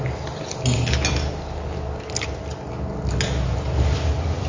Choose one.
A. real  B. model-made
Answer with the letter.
A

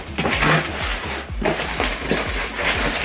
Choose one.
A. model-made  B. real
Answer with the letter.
B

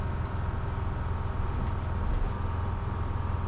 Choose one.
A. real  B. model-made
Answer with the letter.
A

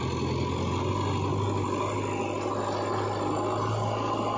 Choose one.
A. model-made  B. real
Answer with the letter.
B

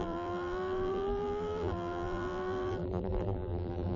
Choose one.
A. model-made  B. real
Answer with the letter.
A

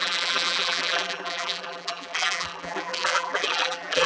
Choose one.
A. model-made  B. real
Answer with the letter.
A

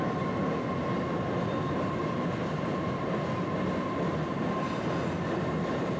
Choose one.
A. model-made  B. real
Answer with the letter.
B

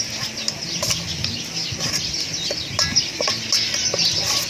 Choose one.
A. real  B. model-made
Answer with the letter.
A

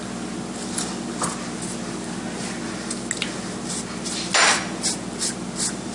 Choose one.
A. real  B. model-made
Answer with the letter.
A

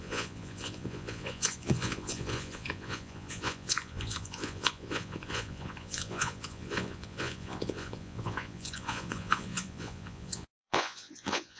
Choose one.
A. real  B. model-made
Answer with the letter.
B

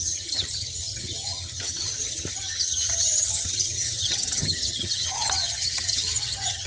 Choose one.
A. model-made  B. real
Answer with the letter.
A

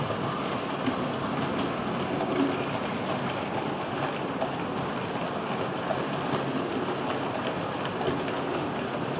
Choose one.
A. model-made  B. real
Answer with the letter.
B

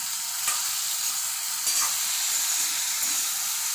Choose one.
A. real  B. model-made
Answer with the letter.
A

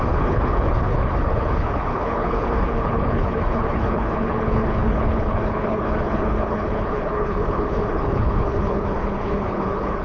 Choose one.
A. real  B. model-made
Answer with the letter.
B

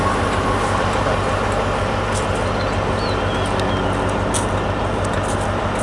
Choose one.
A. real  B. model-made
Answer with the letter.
A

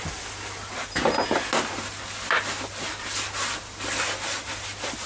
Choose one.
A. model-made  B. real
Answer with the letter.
B